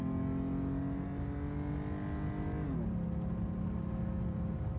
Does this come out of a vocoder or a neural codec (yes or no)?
no